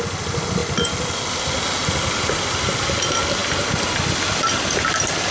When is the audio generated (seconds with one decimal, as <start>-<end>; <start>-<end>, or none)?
none